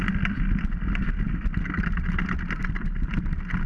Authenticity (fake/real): real